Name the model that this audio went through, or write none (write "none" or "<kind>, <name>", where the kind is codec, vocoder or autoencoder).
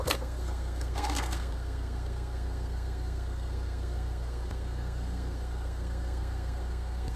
codec, SNAC